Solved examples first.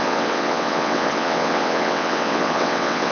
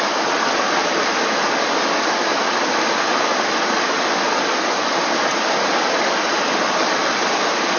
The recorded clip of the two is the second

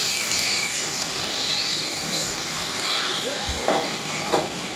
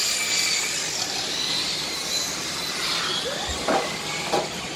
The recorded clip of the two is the second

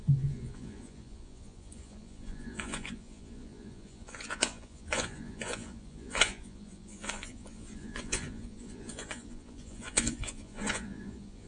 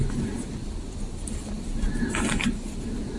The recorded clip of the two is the second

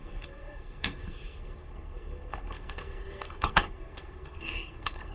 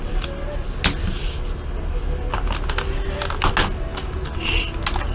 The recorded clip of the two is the second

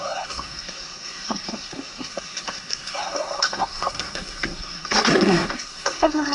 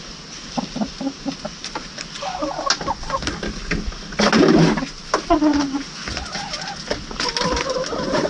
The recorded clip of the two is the second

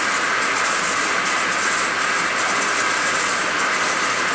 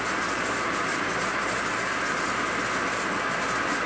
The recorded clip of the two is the first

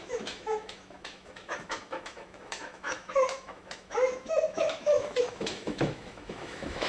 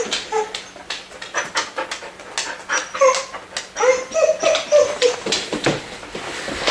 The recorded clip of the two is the second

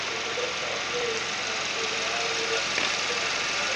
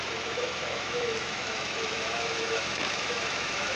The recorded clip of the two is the first